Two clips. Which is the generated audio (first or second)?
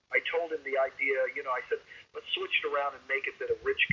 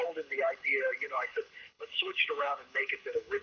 second